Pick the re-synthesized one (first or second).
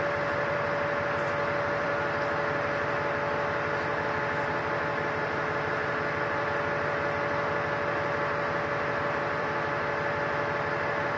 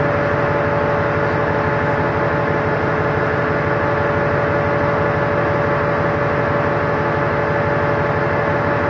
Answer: first